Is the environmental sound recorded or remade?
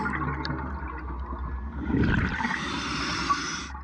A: recorded